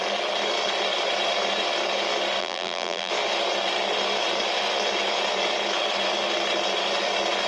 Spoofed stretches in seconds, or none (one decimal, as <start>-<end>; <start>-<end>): 2.4-3.1